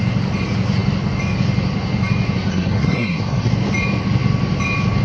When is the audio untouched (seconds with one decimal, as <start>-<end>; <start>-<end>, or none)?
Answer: 0.0-2.5; 3.5-5.0